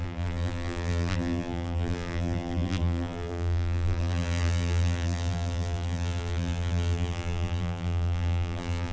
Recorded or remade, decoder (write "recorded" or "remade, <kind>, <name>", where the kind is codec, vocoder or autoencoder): remade, vocoder, BigVGAN v2